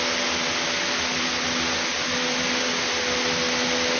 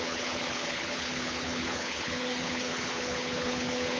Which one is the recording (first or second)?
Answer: first